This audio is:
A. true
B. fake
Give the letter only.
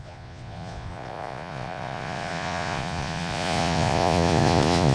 B